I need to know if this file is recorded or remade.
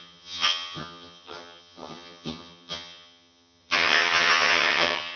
remade